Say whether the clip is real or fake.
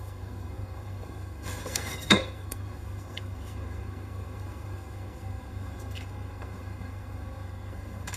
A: fake